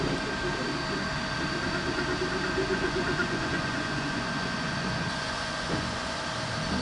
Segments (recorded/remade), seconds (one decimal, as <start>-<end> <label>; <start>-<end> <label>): 0.0-2.7 recorded; 2.7-6.2 remade; 6.2-6.8 recorded